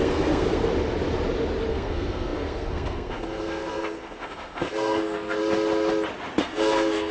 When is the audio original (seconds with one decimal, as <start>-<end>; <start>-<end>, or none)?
0.7-1.7; 5.4-6.4